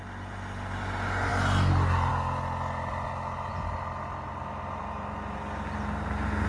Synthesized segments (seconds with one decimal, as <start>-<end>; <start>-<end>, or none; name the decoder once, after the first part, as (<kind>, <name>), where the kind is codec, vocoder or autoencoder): none